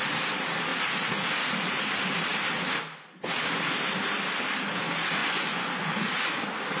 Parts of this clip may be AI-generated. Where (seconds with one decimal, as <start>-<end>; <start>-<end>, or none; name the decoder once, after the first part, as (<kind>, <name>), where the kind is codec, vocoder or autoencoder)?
5.2-6.1 (vocoder, Vocos)